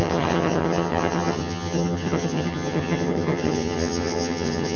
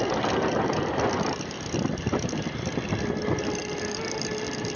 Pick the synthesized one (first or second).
first